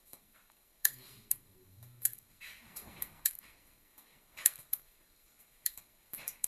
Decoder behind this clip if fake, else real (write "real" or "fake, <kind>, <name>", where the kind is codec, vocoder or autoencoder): fake, codec, SNAC